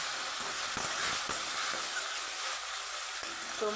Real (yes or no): yes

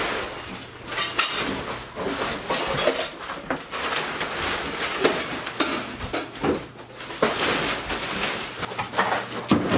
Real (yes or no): yes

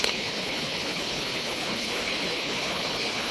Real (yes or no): no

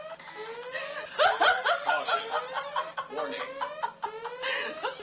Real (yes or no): yes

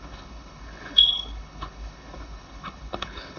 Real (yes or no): no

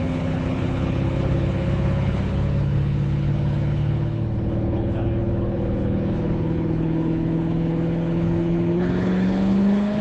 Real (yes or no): no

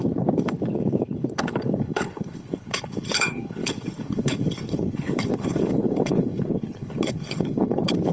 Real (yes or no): no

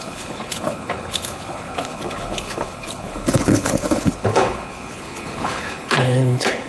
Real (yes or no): no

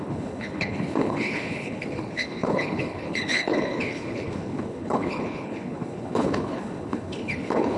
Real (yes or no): no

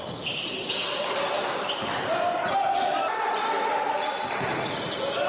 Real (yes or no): yes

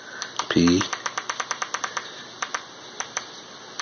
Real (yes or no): yes